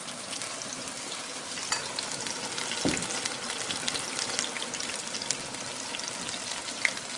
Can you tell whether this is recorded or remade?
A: recorded